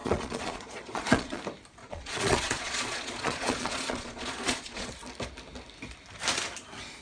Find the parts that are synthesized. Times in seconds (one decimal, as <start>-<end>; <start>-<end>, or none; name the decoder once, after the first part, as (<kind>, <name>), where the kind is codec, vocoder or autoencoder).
0.0-1.4 (vocoder, Vocos); 1.8-4.9